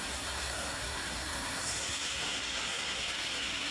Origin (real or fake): fake